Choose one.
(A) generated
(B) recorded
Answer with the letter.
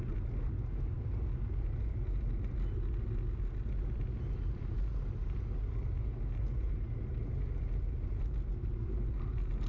B